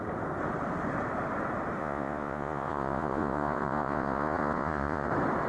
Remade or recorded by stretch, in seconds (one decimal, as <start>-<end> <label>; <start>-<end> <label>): 0.0-1.8 recorded; 1.8-5.1 remade; 5.1-5.5 recorded